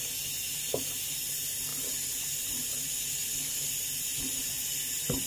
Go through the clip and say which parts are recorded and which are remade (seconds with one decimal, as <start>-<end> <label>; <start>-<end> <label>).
0.0-5.3 recorded